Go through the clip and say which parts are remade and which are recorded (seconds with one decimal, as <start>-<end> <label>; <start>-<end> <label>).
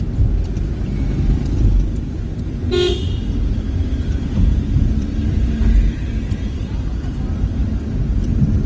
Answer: 0.0-3.8 recorded; 3.8-7.8 remade; 7.8-8.7 recorded